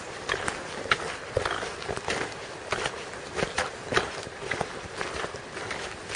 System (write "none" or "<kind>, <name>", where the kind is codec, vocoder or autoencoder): none